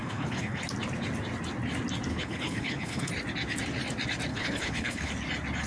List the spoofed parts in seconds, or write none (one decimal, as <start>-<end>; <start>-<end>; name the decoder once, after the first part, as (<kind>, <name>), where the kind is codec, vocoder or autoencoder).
0.0-0.6 (codec, HILCodec); 2.1-3.1; 4.3-5.1